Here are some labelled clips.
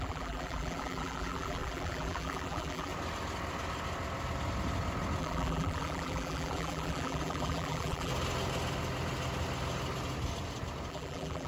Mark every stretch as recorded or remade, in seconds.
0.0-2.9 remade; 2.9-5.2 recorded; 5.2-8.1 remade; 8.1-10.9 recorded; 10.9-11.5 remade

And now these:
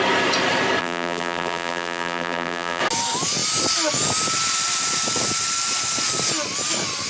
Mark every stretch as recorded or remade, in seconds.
0.0-0.8 recorded; 0.8-2.8 remade; 2.8-7.1 recorded

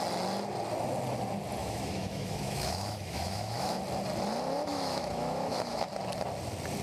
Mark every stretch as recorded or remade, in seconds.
0.0-1.6 recorded; 1.6-3.8 remade; 3.8-4.7 recorded; 4.7-5.9 remade; 5.9-6.8 recorded

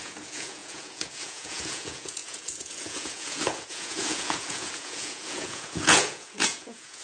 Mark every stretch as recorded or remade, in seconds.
0.0-7.0 remade

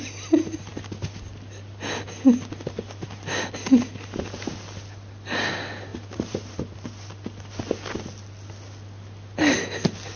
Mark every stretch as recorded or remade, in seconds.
0.0-5.9 recorded; 5.9-7.1 remade; 7.1-10.2 recorded

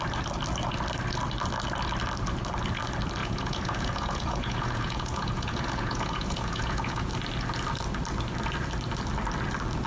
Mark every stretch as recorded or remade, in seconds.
0.0-3.2 recorded; 3.2-7.1 remade; 7.1-9.9 recorded

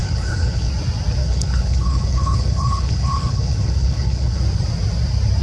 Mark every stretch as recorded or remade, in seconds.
0.0-0.7 remade; 0.7-1.2 recorded; 1.2-4.4 remade; 4.4-5.4 recorded